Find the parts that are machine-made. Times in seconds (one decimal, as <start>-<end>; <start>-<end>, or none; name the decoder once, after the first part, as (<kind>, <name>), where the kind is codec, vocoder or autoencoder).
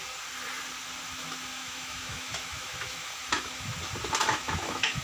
1.5-3.6 (autoencoder, DAC-VAE); 4.2-5.0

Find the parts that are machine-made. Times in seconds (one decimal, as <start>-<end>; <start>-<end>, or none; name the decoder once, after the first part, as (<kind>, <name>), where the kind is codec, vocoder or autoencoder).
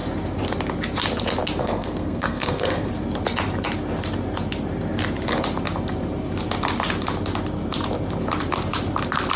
1.6-2.9 (codec, SNAC)